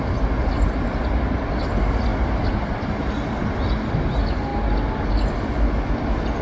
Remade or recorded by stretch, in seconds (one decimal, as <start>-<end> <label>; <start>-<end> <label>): 0.0-6.4 recorded